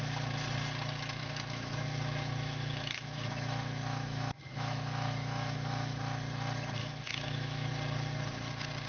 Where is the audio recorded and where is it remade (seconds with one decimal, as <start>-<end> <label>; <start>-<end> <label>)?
0.0-1.2 recorded; 1.2-6.0 remade; 6.0-6.8 recorded; 6.8-7.7 remade; 7.7-8.9 recorded

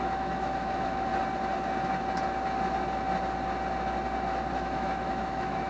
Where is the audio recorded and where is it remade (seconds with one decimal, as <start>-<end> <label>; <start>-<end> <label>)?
0.0-1.1 remade; 1.1-4.5 recorded; 4.5-5.7 remade

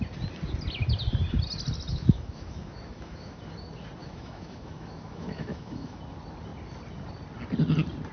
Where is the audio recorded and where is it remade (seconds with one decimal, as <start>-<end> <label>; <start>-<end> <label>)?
0.0-1.9 recorded; 1.9-3.4 remade; 3.4-4.0 recorded; 4.0-6.0 remade; 6.0-8.1 recorded

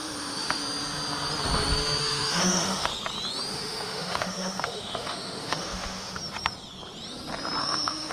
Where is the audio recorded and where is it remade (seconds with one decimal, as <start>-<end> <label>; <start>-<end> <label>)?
0.0-0.6 remade; 0.6-2.0 recorded; 2.0-2.9 remade; 2.9-3.5 recorded; 3.5-6.2 remade; 6.2-7.6 recorded; 7.6-8.1 remade

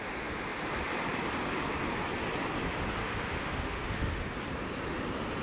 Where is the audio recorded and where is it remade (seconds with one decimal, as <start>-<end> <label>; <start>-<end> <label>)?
0.0-3.0 recorded; 3.0-4.2 remade; 4.2-5.4 recorded

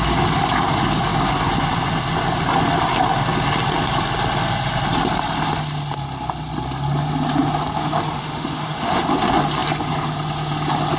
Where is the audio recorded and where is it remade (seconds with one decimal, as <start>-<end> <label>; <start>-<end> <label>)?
0.0-8.2 recorded; 8.2-9.0 remade; 9.0-11.0 recorded

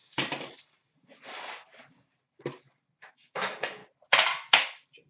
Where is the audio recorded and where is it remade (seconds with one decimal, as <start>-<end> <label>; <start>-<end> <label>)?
0.0-3.1 recorded; 3.1-3.8 remade; 3.8-5.1 recorded

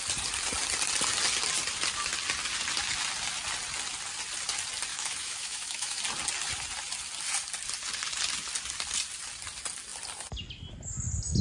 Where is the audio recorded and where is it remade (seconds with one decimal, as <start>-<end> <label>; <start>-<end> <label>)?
0.0-4.9 recorded; 4.9-6.0 remade; 6.0-11.4 recorded